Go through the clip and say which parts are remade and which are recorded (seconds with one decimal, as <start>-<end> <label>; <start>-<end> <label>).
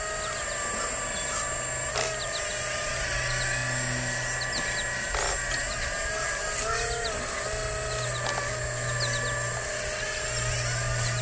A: 0.0-11.2 recorded